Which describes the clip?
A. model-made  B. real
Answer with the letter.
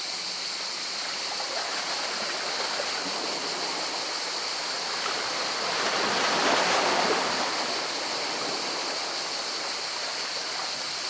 B